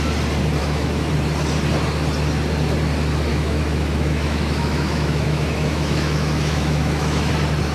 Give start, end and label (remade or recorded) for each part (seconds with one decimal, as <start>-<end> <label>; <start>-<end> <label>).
0.0-0.6 recorded; 0.6-1.1 remade; 1.1-3.3 recorded; 3.3-7.3 remade; 7.3-7.7 recorded